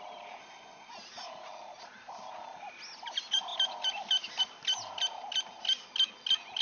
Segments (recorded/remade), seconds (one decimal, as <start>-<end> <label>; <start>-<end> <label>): 0.0-0.4 recorded; 0.4-0.9 remade; 0.9-6.6 recorded